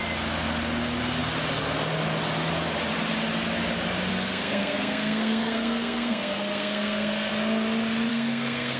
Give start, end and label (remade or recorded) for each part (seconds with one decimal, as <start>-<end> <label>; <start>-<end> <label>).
0.0-4.1 recorded; 4.1-7.3 remade; 7.3-8.1 recorded; 8.1-8.8 remade